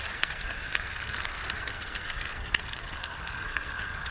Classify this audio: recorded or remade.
remade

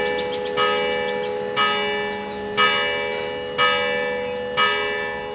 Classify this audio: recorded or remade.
recorded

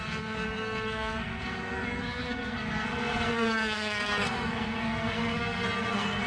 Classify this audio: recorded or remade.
remade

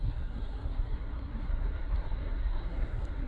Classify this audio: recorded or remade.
remade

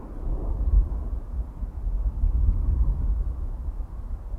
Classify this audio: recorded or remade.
recorded